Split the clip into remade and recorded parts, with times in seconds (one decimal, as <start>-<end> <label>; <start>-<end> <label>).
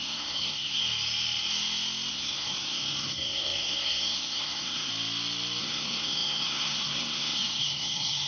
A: 0.0-0.8 remade; 0.8-2.1 recorded; 2.1-4.9 remade; 4.9-5.6 recorded; 5.6-8.3 remade